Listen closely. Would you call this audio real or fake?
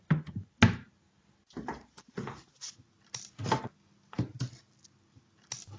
real